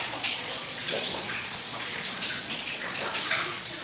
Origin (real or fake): fake